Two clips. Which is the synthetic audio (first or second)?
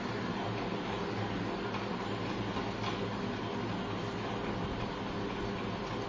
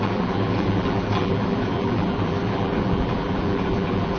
second